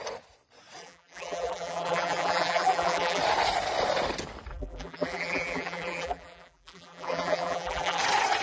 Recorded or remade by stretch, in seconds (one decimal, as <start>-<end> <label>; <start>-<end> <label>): 0.0-0.8 recorded; 0.8-3.2 remade; 3.2-4.5 recorded; 4.5-8.0 remade; 8.0-8.4 recorded